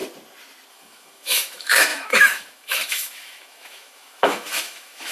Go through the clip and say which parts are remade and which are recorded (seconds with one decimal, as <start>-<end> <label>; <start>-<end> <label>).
0.0-0.7 recorded; 0.7-5.1 remade